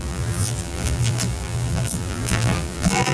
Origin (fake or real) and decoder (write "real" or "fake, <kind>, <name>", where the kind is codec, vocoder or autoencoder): fake, vocoder, BigVGAN v2